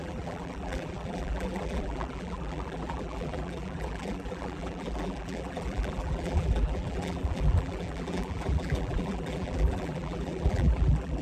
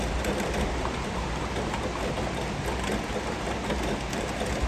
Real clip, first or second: second